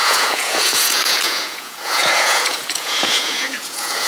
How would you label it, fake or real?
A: fake